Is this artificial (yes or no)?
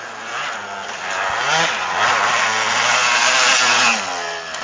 no